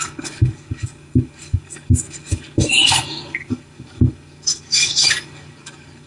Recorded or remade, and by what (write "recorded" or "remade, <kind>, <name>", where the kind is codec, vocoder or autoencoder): remade, codec, DAC